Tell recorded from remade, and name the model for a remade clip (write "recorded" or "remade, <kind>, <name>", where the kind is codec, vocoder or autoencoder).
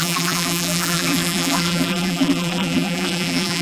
remade, vocoder, BigVGAN v2